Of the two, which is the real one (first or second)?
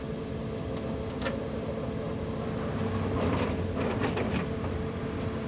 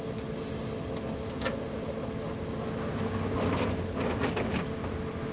second